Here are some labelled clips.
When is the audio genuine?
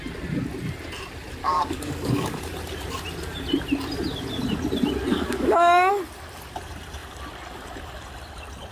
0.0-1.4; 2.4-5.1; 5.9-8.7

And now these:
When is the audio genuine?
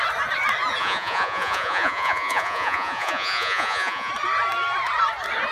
0.0-0.8; 4.1-5.5